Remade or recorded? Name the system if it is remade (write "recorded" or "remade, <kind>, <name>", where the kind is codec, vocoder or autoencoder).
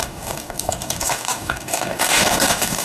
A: remade, codec, DAC